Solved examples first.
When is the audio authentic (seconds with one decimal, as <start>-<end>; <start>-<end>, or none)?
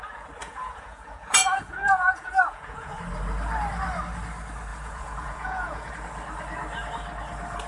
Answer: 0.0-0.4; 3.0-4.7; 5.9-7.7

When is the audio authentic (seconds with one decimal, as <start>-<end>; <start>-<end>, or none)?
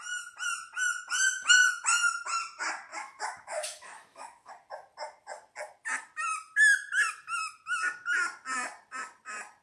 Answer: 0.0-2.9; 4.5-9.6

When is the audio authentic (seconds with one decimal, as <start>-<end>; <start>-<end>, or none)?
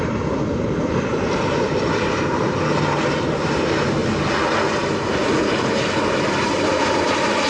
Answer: 4.0-4.7; 5.2-6.4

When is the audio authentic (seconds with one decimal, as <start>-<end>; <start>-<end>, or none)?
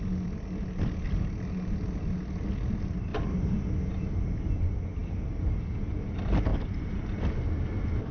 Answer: 0.0-8.1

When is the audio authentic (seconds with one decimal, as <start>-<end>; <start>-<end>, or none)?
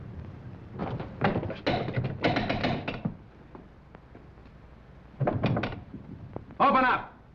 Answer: 0.0-4.4; 6.7-7.3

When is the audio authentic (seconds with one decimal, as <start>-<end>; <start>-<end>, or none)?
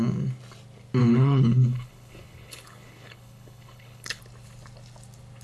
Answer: 0.0-1.0; 4.2-5.4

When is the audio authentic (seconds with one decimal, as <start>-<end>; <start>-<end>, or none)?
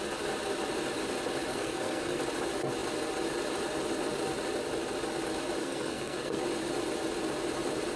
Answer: 0.0-1.5; 2.2-5.6; 6.4-8.0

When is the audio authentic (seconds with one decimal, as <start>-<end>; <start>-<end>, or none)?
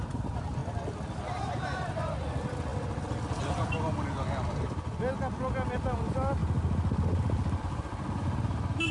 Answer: 0.0-8.9